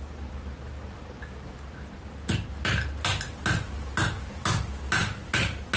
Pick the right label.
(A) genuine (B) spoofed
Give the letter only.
A